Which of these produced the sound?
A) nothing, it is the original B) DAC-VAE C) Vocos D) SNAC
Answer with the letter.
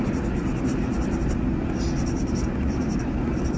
A